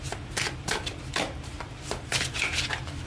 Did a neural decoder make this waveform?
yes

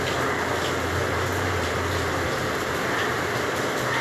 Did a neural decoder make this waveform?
no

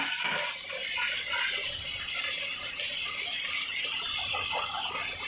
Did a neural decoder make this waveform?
no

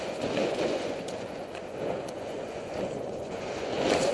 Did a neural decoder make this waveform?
yes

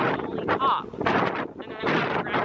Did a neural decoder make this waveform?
no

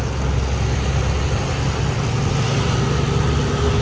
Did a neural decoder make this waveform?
no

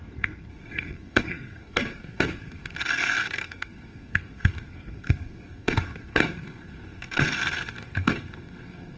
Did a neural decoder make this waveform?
yes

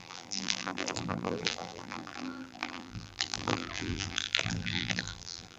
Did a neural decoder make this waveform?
yes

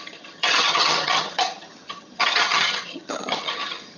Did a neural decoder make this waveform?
yes